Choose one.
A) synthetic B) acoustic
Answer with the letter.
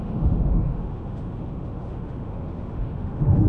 A